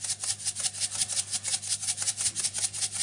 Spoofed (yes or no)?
no